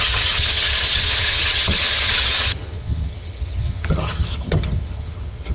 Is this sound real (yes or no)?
no